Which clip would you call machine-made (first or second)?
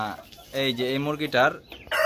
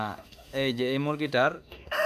second